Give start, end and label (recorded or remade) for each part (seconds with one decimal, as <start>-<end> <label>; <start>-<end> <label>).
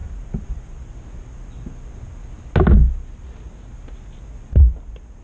0.0-5.2 recorded